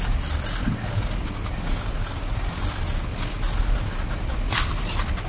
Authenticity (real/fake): real